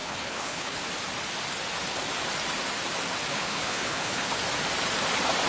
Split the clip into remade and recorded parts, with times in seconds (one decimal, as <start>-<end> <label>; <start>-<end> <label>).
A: 0.0-0.8 remade; 0.8-3.3 recorded; 3.3-4.3 remade; 4.3-5.5 recorded